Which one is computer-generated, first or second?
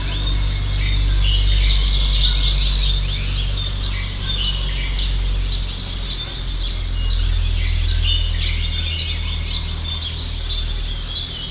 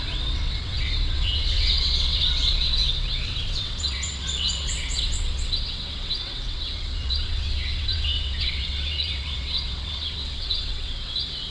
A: second